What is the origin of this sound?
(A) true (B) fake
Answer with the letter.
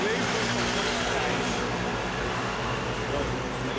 B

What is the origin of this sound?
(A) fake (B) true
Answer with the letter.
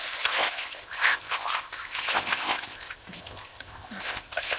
A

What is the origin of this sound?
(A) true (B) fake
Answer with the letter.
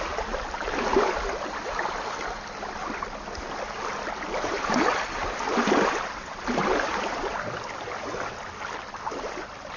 A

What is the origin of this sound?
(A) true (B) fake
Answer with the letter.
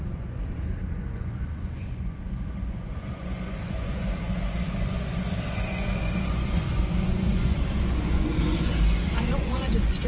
B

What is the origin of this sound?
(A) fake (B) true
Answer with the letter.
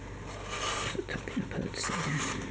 B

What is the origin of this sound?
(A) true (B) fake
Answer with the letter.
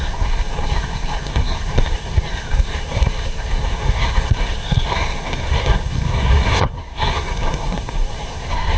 B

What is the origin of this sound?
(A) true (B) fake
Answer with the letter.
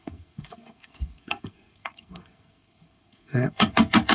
B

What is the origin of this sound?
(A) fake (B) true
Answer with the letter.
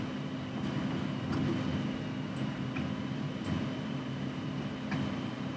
B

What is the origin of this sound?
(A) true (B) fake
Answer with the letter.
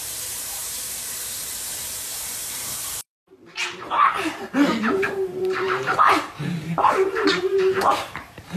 B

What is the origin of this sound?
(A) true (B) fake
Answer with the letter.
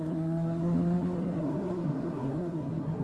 B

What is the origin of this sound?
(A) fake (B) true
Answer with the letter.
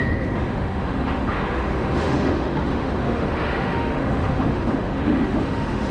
A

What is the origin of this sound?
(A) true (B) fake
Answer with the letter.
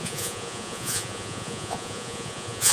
B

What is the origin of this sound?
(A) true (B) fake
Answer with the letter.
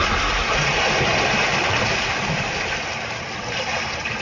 A